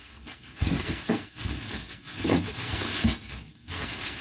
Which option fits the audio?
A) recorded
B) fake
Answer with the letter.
B